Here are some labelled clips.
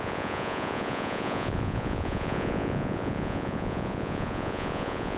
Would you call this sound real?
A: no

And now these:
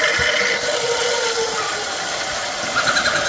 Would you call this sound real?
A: yes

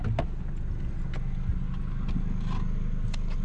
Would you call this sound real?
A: yes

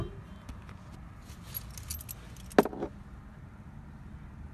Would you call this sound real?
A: yes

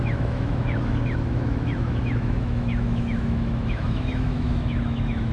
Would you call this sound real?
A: no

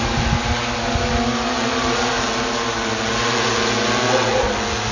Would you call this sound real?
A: yes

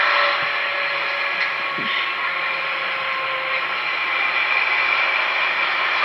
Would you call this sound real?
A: yes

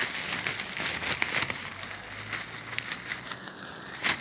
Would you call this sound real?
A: yes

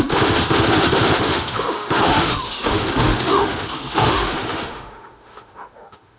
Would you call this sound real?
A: no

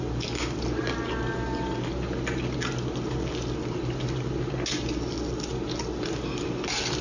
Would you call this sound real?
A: yes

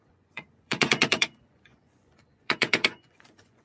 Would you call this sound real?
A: no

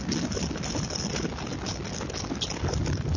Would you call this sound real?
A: yes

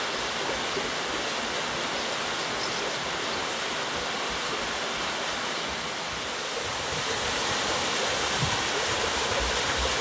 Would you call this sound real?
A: yes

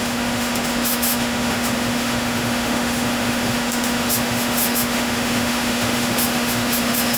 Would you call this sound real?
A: no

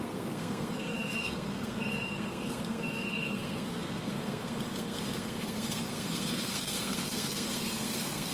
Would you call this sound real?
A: no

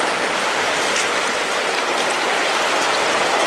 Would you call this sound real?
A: yes